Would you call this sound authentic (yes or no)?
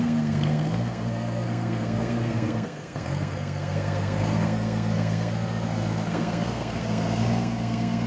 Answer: no